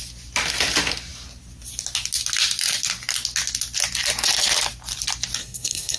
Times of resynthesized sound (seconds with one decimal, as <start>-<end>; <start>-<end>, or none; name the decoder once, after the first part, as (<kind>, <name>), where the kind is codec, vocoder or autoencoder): 5.4-6.0 (codec, SNAC)